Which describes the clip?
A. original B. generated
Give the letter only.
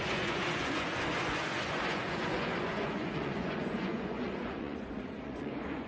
B